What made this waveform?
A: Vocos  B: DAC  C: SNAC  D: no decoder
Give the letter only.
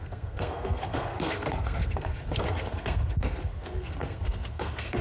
C